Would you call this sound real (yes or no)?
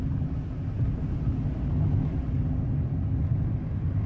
yes